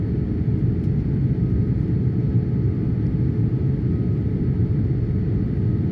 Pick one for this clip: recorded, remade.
recorded